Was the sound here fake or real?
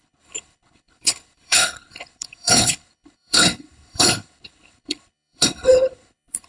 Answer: fake